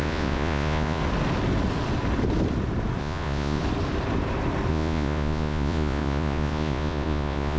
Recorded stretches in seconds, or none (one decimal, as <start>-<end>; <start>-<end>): 1.0-3.0; 3.6-4.7